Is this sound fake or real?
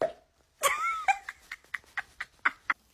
real